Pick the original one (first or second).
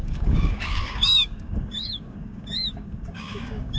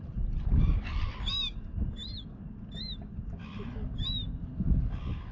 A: second